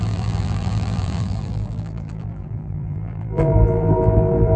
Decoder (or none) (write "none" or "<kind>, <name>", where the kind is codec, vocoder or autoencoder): vocoder, BigVGAN v2